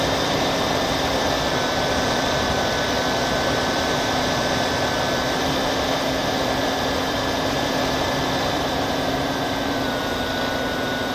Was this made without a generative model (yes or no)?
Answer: no